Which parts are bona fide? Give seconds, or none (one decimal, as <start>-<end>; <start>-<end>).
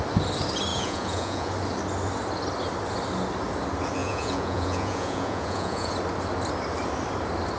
0.0-0.7; 1.5-4.0; 5.9-7.6